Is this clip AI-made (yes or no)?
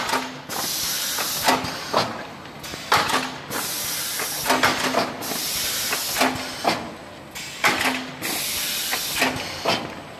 no